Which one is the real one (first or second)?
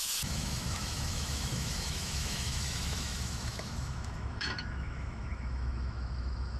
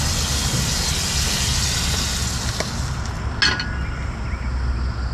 second